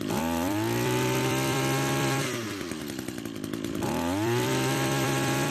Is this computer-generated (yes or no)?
yes